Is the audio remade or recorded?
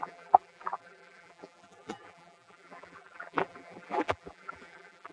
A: remade